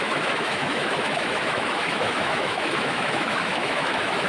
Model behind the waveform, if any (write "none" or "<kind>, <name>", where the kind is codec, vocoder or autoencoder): autoencoder, DAC-VAE